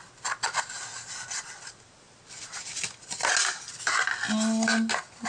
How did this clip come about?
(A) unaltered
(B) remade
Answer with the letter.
A